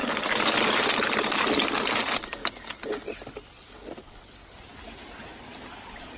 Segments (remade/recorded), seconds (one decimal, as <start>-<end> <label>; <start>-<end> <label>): 0.0-6.2 recorded